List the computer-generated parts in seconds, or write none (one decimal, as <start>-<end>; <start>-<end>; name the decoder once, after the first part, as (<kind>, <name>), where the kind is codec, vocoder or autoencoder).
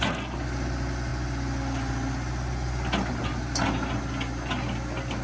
none